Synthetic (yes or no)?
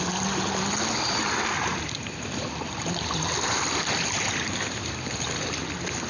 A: no